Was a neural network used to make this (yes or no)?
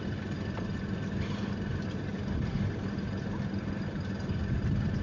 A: no